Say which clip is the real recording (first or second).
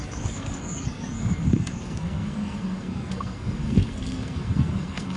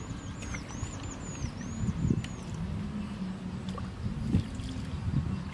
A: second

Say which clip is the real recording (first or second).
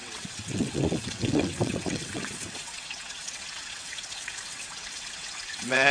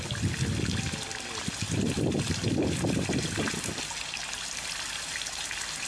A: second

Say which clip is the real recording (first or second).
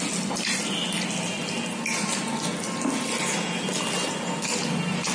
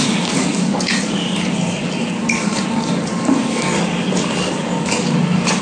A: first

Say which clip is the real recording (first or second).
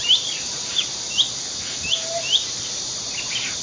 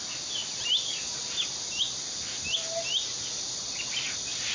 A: second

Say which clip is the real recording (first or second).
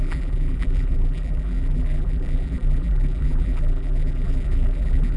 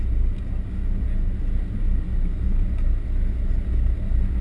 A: second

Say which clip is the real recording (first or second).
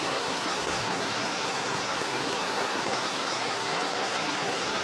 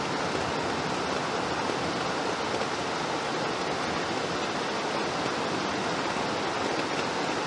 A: second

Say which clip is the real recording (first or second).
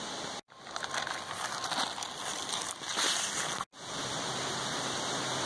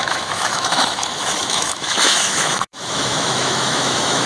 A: first